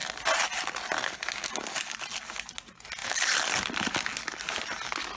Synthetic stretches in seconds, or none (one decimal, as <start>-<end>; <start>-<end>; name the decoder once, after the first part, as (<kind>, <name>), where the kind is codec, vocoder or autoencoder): none